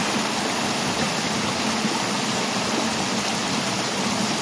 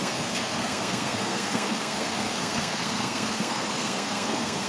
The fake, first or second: second